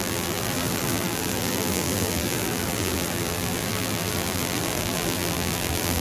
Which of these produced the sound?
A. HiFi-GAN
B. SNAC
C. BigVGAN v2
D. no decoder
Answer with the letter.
C